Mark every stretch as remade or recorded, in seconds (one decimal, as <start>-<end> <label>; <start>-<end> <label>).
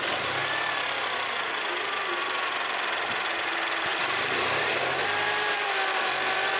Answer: 0.0-0.4 recorded; 0.4-3.4 remade; 3.4-3.9 recorded; 3.9-6.6 remade